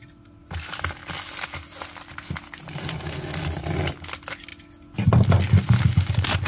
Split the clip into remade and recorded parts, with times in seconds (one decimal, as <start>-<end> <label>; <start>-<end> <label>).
0.0-6.5 recorded